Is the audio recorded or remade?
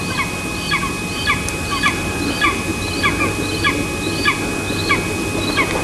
recorded